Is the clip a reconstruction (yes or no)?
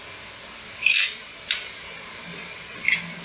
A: yes